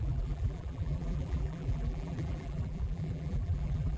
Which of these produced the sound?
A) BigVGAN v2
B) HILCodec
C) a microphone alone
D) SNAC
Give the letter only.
A